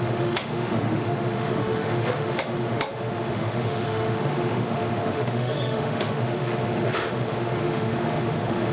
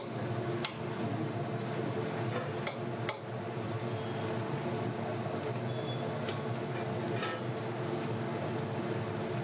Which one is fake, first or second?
first